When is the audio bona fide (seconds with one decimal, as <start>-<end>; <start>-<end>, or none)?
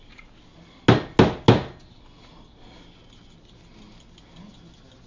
0.0-5.1